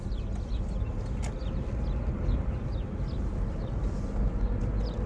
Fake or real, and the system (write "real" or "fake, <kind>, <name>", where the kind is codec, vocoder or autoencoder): real